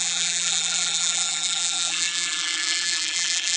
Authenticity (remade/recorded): remade